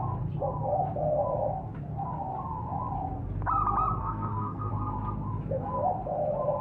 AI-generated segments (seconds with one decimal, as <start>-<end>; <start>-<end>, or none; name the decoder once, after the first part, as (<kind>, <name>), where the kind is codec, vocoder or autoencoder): 4.0-4.7 (codec, SNAC)